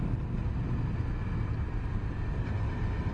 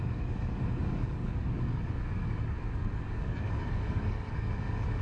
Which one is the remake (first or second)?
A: second